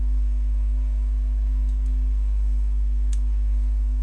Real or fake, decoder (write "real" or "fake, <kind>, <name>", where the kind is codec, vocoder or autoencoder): fake, codec, SNAC